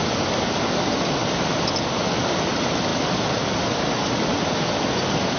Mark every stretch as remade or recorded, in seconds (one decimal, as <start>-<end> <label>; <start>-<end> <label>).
0.0-5.4 recorded